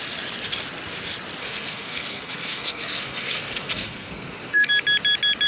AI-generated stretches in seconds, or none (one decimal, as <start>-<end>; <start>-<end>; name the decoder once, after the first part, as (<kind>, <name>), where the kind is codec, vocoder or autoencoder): 1.4-4.7 (codec, SNAC)